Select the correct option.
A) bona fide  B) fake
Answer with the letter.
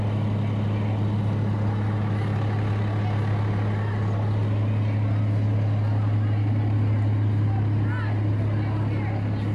A